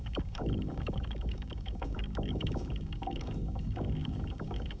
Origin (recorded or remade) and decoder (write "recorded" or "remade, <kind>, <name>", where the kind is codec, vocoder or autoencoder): remade, codec, DAC